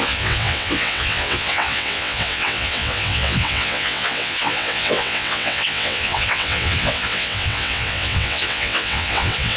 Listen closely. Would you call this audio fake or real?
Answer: fake